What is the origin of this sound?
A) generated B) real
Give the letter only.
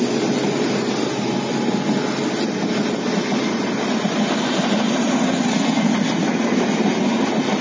B